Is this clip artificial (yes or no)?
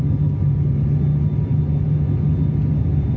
no